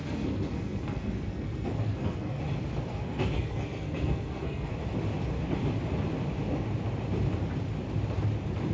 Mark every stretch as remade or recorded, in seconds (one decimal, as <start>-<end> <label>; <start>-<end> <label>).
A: 0.0-2.4 remade; 2.4-2.9 recorded; 2.9-4.7 remade; 4.7-8.7 recorded